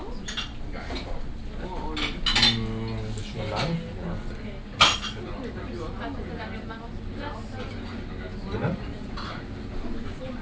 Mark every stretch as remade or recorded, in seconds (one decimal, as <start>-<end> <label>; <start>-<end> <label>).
0.0-8.6 recorded; 8.6-9.4 remade; 9.4-10.4 recorded